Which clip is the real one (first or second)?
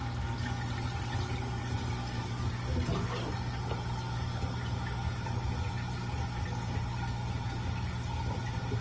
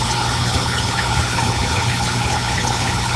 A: first